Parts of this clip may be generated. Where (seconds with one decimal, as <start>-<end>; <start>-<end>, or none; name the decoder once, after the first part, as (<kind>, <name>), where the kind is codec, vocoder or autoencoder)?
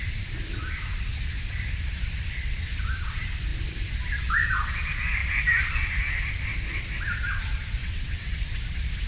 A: 7.8-8.4 (vocoder, WaveNeXt)